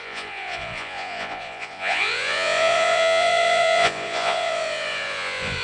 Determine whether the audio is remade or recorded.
remade